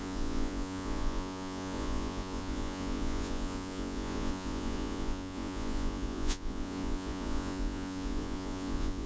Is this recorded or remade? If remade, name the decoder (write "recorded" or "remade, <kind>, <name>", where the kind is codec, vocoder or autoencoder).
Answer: remade, vocoder, Vocos